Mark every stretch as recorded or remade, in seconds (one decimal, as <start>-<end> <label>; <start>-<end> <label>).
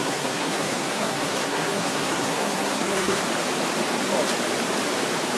0.0-3.2 remade; 3.2-5.4 recorded